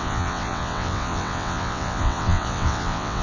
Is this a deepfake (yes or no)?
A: yes